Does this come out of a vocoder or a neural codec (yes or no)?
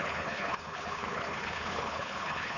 yes